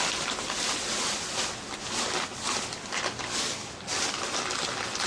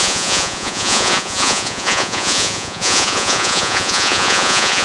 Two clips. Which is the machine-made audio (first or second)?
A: second